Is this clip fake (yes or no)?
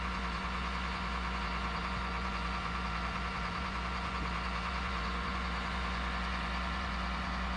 yes